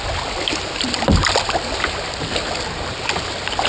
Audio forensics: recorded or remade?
recorded